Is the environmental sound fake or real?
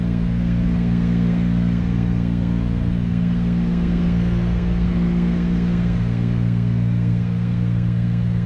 fake